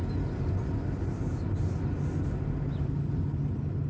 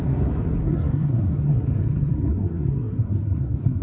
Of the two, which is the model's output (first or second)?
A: second